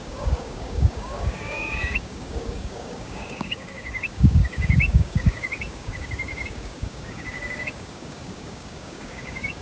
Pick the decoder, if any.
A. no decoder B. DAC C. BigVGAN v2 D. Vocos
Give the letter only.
B